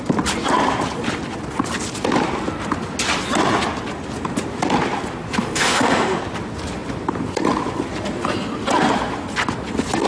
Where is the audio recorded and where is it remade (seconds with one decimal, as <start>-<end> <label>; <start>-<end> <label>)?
0.0-5.4 recorded; 5.4-6.2 remade; 6.2-10.1 recorded